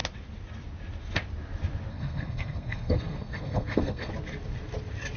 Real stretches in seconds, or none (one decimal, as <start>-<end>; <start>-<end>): 0.0-1.9; 4.1-5.2